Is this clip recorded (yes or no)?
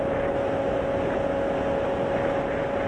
yes